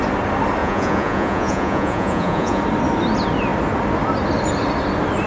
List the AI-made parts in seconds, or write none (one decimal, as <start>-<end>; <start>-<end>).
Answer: 0.6-2.6